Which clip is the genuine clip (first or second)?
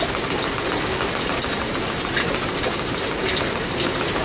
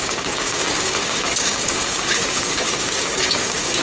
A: first